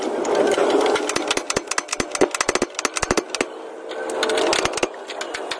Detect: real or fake real